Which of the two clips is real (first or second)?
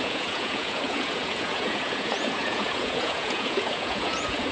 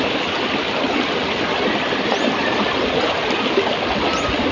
second